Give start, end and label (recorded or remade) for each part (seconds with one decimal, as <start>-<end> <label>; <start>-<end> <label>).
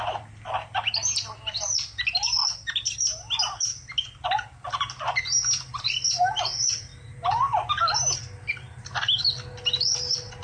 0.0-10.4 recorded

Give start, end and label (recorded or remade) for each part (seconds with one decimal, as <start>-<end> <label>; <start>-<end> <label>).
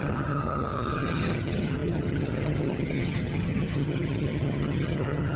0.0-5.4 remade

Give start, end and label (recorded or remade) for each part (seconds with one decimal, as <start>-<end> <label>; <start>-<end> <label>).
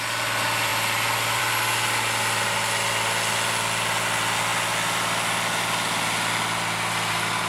0.0-7.5 recorded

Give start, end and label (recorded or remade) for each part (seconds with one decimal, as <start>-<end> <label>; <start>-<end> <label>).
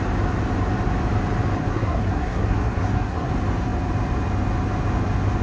0.0-1.6 recorded; 1.6-3.3 remade; 3.3-5.4 recorded